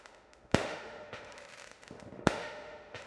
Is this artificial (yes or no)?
yes